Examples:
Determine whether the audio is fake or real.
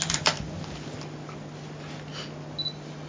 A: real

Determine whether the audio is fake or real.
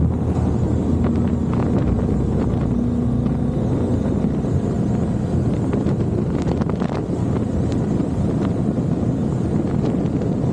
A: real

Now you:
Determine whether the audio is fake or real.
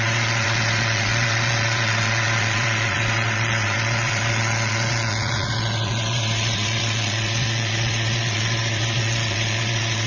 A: fake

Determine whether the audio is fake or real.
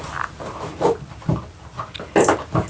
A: real